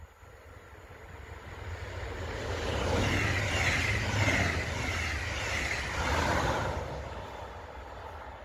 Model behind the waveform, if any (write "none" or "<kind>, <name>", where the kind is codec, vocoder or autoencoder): none